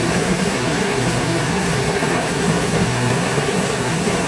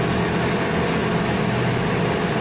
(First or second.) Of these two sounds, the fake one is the first